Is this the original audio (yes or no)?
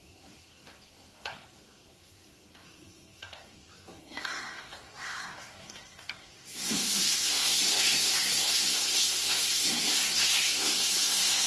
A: no